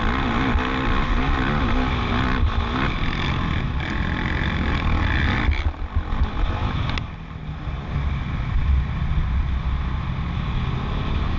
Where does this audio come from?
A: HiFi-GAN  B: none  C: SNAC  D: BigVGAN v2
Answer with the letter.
B